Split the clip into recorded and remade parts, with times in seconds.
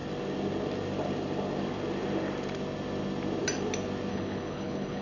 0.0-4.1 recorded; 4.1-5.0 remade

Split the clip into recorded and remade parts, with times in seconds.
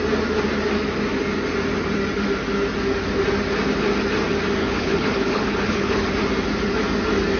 0.0-4.6 recorded; 4.6-6.1 remade; 6.1-7.4 recorded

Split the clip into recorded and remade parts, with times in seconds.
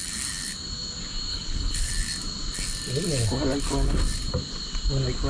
0.0-1.3 recorded; 1.3-1.9 remade; 1.9-5.3 recorded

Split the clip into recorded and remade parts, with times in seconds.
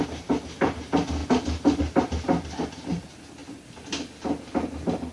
0.0-5.1 recorded